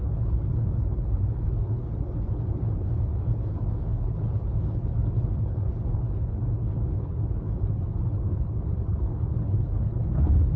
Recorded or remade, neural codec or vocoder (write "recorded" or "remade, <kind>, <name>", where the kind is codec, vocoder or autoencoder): remade, codec, HILCodec